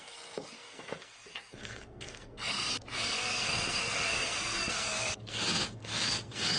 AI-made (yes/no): yes